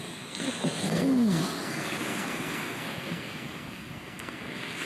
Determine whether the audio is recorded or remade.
remade